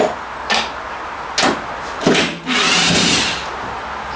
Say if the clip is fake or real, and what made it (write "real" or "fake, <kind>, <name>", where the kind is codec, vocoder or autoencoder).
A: real